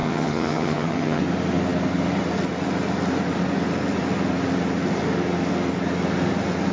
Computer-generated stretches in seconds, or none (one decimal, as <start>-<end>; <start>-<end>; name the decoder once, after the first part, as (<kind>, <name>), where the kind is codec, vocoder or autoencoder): 0.0-1.2 (vocoder, HiFi-GAN)